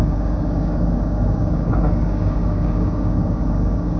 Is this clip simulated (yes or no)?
yes